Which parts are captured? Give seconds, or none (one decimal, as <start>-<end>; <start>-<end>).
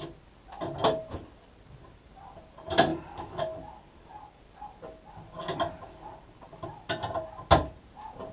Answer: 0.0-8.3